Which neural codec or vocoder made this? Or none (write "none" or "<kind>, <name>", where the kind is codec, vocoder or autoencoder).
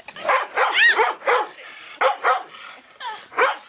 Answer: none